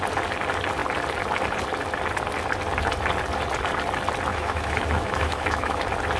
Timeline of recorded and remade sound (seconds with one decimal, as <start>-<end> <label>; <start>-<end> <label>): 0.0-4.3 recorded; 4.3-5.8 remade; 5.8-6.2 recorded